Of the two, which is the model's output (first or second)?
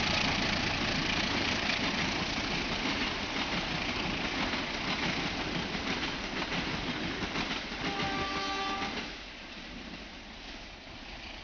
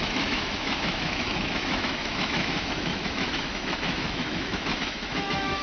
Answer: second